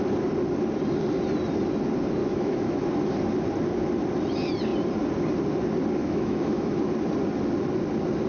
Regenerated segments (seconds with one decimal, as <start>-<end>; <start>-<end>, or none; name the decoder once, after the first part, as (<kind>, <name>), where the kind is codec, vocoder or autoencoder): 2.2-2.8 (autoencoder, DAC-VAE); 6.0-6.8